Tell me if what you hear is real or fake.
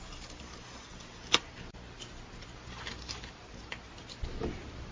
real